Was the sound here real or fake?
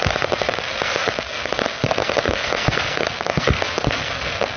fake